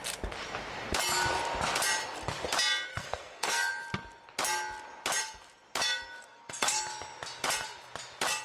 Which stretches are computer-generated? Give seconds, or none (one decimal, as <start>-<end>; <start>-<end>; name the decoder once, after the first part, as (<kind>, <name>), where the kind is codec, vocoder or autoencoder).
2.9-3.7 (codec, SNAC); 6.2-6.8